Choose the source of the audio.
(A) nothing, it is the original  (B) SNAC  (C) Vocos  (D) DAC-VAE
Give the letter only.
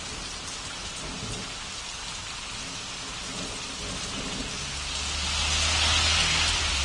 A